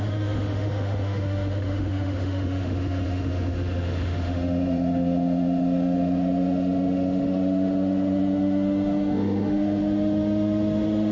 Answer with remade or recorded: remade